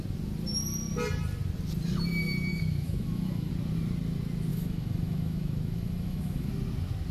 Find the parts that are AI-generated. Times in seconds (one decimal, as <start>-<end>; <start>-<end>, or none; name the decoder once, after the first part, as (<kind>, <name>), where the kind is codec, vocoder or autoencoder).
2.5-3.5 (autoencoder, DAC-VAE); 4.5-6.5

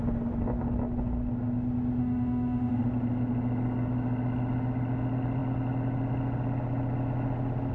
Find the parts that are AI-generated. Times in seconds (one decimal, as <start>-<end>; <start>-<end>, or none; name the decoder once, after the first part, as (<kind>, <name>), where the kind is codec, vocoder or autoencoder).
2.0-2.8 (autoencoder, DAC-VAE)

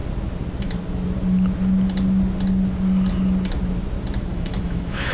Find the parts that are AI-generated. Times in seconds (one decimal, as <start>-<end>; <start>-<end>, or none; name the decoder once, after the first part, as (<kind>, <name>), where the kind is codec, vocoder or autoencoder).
4.3-5.1 (autoencoder, DAC-VAE)

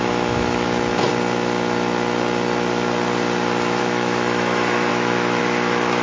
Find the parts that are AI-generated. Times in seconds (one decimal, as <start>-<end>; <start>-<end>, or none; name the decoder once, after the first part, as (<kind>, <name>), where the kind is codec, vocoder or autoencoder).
0.0-0.9 (autoencoder, DAC-VAE); 3.8-6.0